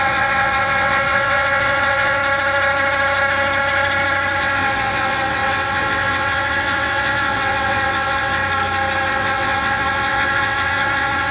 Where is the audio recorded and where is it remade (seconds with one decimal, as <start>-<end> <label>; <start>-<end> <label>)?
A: 0.0-2.2 remade; 2.2-4.4 recorded; 4.4-8.4 remade; 8.4-9.1 recorded; 9.1-11.3 remade